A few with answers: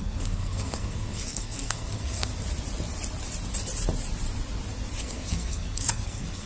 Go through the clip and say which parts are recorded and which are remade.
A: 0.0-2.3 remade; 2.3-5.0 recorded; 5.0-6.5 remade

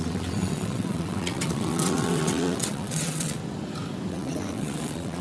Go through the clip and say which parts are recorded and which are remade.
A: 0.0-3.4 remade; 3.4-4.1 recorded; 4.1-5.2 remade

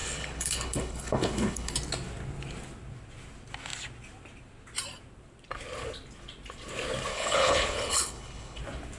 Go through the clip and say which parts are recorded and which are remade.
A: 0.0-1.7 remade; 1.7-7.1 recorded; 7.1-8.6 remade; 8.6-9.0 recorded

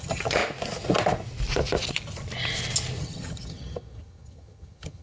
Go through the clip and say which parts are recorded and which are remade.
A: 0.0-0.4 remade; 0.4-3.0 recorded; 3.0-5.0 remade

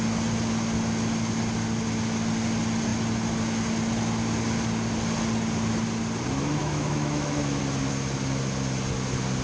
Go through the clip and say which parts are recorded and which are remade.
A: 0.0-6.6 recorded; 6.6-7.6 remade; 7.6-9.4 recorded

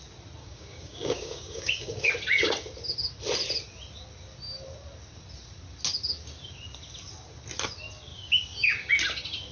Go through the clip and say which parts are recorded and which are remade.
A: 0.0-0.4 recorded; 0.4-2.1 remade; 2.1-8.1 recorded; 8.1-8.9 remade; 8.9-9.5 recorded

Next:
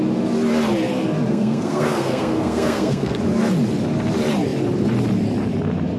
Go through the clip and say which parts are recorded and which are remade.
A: 0.0-1.3 recorded; 1.3-3.2 remade; 3.2-6.0 recorded